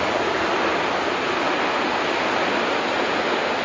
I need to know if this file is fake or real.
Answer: real